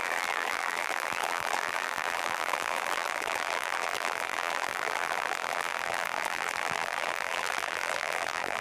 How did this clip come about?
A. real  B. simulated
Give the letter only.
B